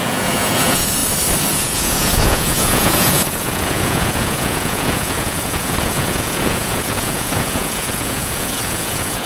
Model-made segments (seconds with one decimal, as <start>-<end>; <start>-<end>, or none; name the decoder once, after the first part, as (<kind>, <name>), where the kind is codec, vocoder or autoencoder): 0.0-1.0 (vocoder, Vocos); 1.5-9.3